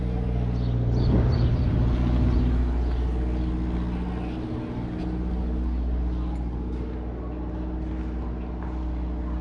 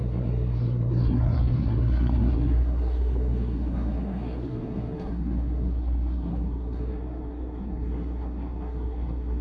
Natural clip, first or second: first